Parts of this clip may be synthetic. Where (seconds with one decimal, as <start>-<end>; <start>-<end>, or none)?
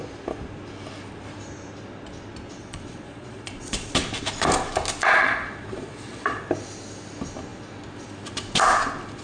2.6-3.9; 5.0-6.4